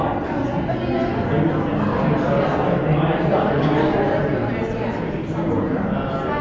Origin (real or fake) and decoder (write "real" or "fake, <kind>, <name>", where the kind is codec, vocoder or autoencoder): real